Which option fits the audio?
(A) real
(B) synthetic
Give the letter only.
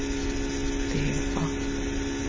A